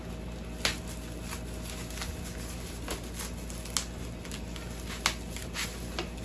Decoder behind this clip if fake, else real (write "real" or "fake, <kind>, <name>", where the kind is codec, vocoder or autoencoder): real